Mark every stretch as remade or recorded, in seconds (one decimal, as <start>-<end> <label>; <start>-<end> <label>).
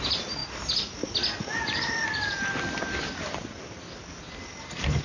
0.0-5.0 recorded